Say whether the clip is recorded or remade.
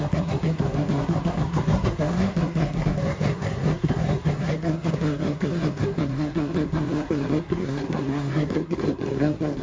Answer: remade